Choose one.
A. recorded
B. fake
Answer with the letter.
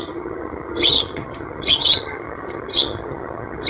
B